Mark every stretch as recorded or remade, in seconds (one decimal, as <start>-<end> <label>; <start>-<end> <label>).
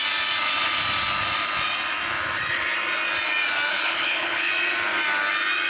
0.0-3.7 recorded; 3.7-4.5 remade; 4.5-5.7 recorded